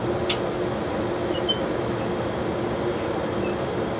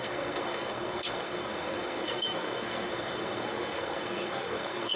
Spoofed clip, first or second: second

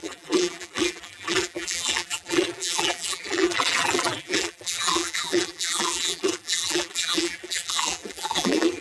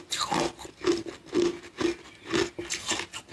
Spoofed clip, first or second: first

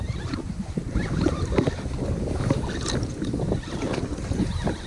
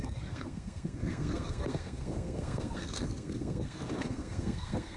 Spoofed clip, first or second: second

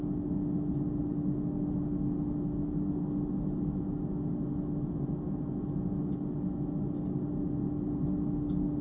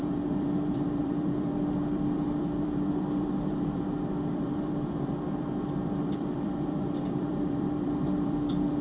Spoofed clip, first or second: second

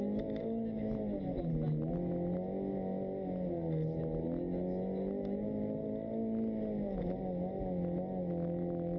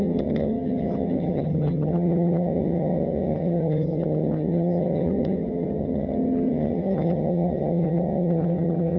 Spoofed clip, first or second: second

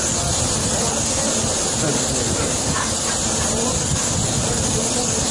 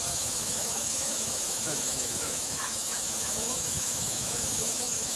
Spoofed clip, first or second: second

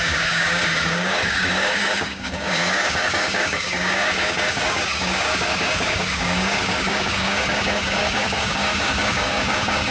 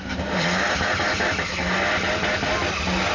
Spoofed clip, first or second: first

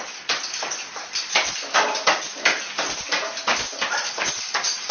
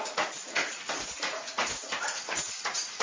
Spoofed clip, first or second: second